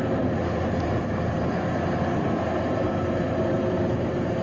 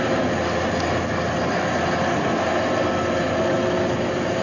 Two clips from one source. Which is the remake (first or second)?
first